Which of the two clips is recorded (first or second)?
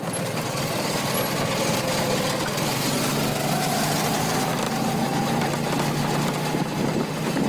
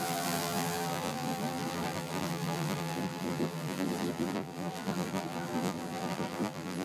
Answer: first